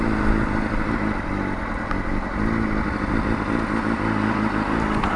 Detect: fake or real real